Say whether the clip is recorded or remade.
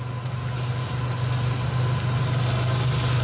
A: recorded